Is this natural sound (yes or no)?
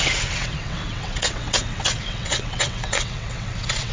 no